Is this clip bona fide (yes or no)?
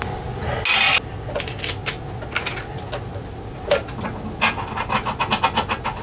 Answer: yes